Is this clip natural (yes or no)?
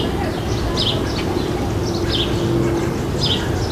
yes